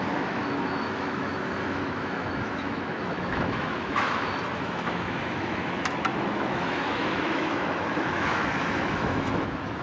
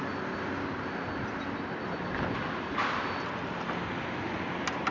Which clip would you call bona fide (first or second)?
second